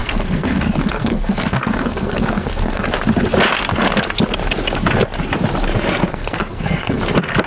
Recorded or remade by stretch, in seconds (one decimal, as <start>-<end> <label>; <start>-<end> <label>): 0.0-2.8 remade; 2.8-6.1 recorded; 6.1-7.0 remade; 7.0-7.5 recorded